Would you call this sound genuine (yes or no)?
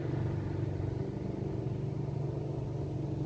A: yes